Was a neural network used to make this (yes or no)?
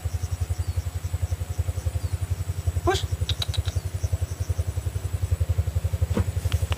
no